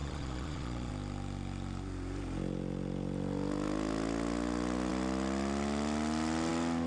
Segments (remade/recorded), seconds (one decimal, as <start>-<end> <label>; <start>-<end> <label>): 0.0-0.9 remade; 0.9-6.9 recorded